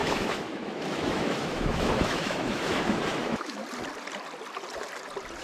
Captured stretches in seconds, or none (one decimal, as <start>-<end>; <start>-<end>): 3.6-5.4